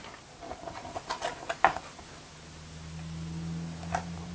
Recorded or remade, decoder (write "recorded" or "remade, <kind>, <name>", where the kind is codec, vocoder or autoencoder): recorded